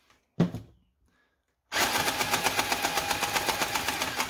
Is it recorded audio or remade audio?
recorded